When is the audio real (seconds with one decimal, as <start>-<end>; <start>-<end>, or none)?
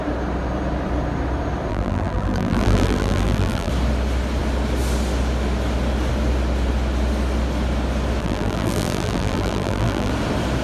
0.0-1.7; 3.7-8.2; 10.1-10.6